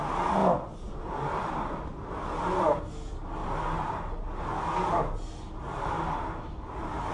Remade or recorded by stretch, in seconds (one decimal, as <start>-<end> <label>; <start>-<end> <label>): 0.0-0.4 recorded; 0.4-2.8 remade; 2.8-3.4 recorded; 3.4-4.0 remade; 4.0-7.1 recorded